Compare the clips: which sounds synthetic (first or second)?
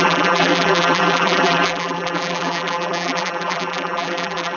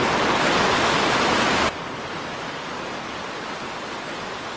first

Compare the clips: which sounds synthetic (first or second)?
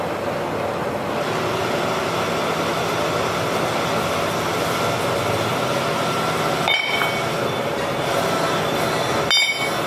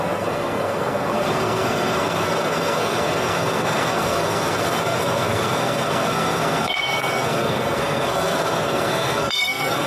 second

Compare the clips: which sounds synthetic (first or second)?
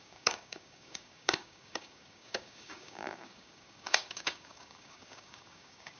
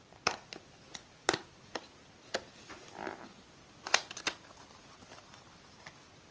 first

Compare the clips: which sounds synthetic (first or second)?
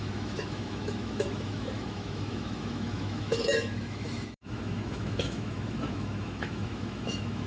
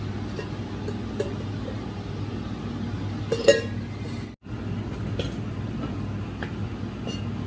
first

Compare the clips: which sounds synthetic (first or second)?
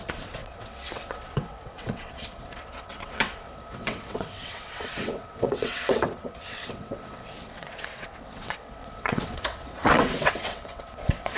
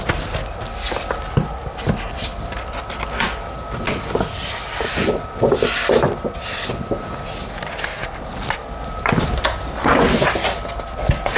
first